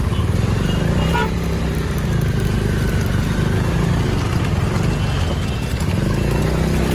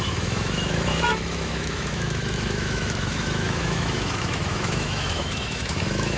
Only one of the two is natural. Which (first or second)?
first